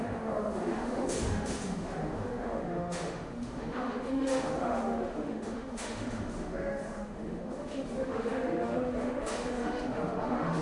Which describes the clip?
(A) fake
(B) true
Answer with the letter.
A